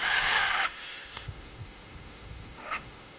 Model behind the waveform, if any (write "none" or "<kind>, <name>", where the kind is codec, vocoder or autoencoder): autoencoder, DAC-VAE